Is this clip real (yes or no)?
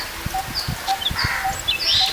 yes